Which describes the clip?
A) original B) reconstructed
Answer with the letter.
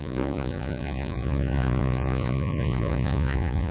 B